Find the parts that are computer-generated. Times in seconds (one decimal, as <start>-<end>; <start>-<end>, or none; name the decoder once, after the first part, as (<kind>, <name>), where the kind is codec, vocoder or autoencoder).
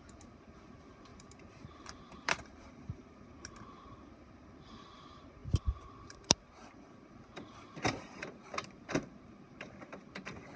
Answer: 0.0-10.6 (vocoder, BigVGAN v2)